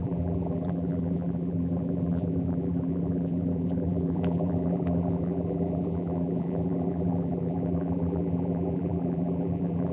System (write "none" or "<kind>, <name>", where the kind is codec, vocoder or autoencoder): vocoder, BigVGAN v2